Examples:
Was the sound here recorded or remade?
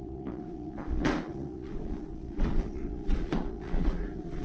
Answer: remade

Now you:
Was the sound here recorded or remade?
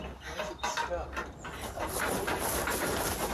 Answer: recorded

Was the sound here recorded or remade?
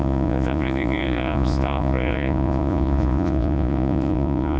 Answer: remade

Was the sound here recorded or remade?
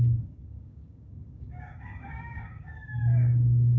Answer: remade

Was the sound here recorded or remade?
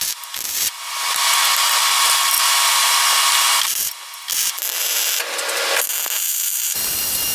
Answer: recorded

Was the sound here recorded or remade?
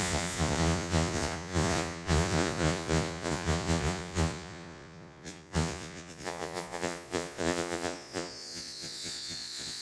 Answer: remade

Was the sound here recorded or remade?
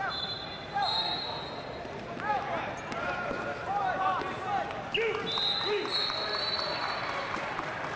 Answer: recorded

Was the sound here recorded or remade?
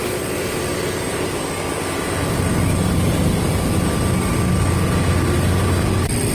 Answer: recorded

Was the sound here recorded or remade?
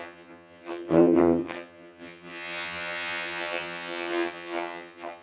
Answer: remade